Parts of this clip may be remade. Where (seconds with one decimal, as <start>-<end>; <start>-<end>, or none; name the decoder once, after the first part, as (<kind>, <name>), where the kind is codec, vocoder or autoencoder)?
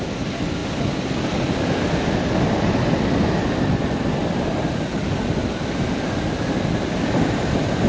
none